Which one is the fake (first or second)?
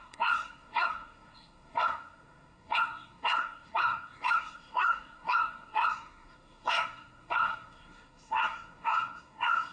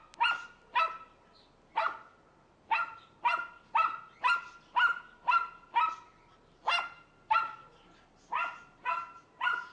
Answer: first